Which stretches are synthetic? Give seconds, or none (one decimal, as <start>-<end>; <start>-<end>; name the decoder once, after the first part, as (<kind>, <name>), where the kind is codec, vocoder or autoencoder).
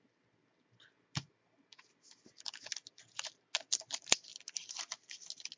none